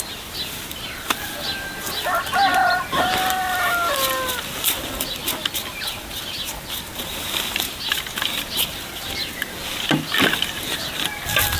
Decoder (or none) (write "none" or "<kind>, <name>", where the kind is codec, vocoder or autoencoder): none